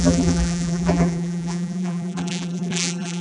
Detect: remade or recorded remade